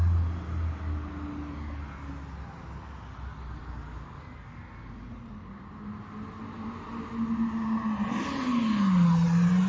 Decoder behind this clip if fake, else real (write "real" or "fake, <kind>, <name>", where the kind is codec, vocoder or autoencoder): real